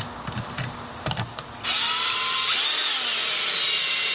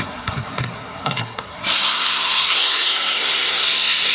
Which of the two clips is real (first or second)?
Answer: first